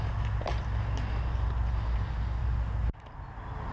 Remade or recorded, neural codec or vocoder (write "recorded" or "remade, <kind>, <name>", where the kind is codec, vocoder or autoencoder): recorded